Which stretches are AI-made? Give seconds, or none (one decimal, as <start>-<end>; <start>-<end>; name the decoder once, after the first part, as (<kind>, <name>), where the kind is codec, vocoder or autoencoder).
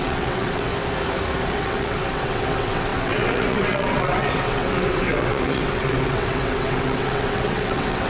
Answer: 0.0-0.7 (vocoder, WaveNeXt); 1.5-8.1